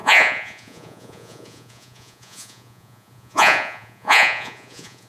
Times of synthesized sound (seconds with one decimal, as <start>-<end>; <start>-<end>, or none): 0.0-5.1